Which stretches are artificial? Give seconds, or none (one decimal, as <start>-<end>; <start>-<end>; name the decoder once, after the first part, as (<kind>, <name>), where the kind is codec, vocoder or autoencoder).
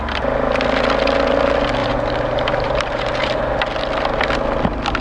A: 1.8-3.4 (vocoder, BigVGAN v2)